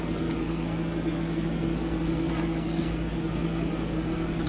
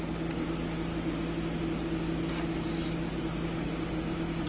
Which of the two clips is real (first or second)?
second